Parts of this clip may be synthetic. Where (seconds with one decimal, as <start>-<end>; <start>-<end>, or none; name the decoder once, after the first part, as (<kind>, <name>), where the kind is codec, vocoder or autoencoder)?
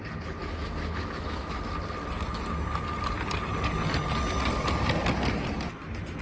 0.4-1.6 (autoencoder, DAC-VAE)